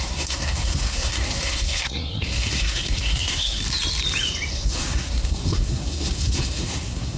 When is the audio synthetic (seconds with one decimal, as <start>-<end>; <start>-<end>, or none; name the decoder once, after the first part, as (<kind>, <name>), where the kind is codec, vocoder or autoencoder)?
0.0-3.6 (codec, SNAC); 4.5-7.2